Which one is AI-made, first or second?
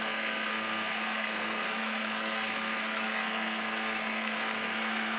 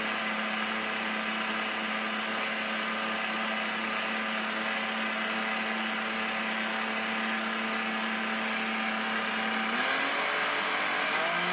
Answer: first